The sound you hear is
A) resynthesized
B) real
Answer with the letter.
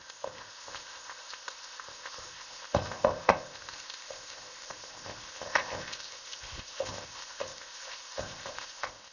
A